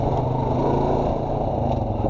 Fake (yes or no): no